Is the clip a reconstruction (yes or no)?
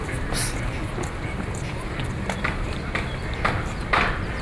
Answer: yes